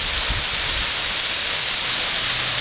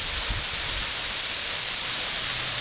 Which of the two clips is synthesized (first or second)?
second